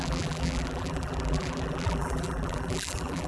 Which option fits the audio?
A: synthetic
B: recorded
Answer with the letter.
A